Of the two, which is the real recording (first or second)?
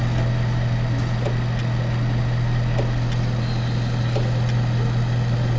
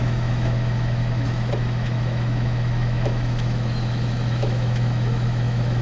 first